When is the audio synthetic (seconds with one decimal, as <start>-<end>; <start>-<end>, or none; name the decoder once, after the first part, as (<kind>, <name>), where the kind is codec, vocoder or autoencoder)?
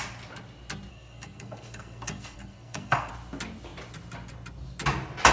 0.9-3.1 (codec, SNAC)